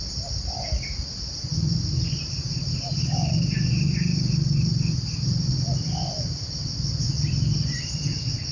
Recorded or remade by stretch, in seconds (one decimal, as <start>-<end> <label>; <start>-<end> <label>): 0.0-8.5 recorded